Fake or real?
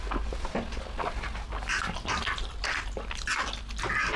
real